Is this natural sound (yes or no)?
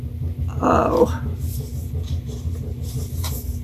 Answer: yes